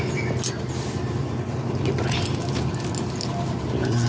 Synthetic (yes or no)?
no